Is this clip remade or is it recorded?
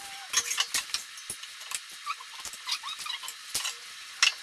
recorded